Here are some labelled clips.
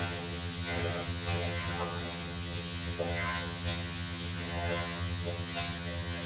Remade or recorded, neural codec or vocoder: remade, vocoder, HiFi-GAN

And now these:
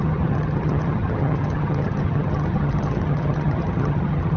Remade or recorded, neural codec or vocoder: remade, vocoder, HiFi-GAN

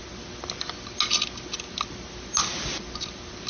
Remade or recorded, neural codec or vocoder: recorded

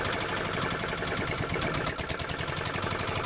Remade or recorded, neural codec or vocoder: recorded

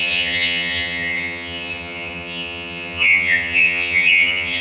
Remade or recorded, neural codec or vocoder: remade, vocoder, HiFi-GAN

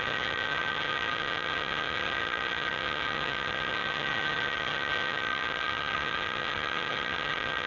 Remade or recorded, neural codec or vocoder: remade, vocoder, HiFi-GAN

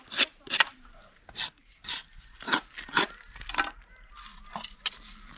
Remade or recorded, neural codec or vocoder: recorded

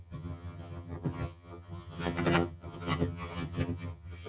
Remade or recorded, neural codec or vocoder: remade, vocoder, HiFi-GAN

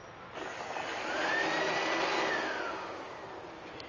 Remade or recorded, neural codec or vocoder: recorded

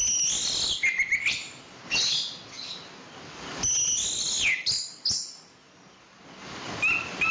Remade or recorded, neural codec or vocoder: recorded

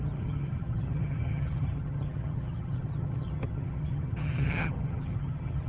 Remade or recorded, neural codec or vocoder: remade, vocoder, HiFi-GAN